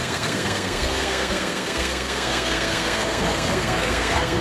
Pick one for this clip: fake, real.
fake